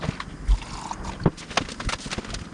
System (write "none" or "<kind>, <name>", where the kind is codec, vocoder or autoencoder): none